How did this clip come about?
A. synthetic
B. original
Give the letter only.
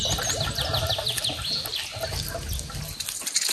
B